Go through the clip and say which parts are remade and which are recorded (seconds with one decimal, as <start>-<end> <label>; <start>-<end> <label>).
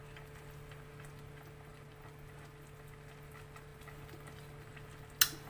0.0-5.5 recorded